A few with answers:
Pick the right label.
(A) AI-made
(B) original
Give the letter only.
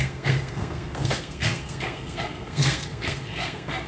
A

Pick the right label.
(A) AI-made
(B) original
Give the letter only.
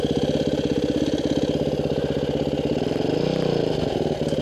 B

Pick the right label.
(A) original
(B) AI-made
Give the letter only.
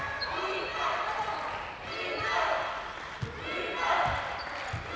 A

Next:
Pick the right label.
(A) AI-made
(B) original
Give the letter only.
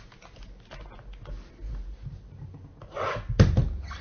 B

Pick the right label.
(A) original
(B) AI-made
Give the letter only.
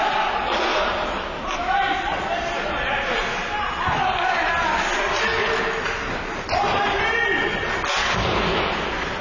A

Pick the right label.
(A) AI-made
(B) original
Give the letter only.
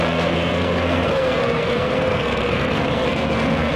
A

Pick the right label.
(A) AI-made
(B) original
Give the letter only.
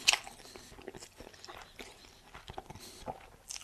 B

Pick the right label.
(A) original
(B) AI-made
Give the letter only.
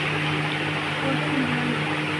A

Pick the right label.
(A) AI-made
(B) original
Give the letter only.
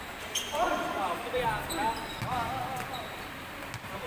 B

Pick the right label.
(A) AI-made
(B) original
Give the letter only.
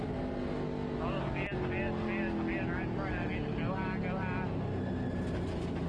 B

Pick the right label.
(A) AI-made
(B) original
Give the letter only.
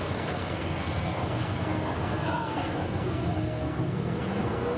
A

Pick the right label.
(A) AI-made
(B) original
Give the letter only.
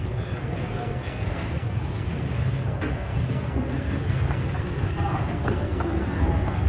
A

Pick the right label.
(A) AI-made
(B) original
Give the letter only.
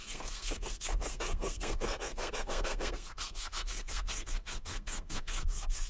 A